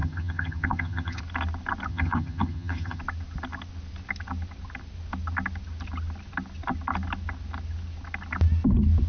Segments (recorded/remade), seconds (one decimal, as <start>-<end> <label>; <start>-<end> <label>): 0.0-1.2 remade; 1.2-1.9 recorded; 1.9-3.0 remade; 3.0-9.1 recorded